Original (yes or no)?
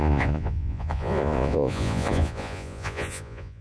no